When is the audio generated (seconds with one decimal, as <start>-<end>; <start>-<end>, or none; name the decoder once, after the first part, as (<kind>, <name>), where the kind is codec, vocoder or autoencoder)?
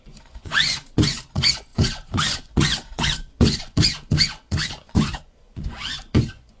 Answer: 0.0-6.6 (vocoder, Vocos)